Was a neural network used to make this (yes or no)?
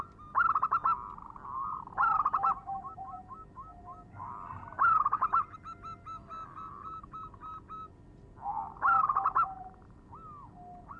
no